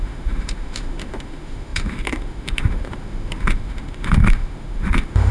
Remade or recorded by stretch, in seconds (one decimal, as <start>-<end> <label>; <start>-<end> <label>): 0.0-5.3 remade